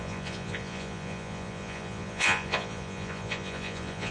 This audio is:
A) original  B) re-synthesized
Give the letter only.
B